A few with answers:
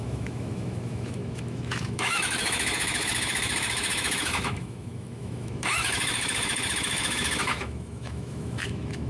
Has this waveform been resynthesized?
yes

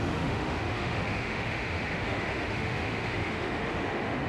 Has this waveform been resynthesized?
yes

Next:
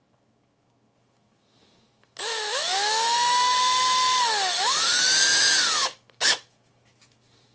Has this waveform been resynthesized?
yes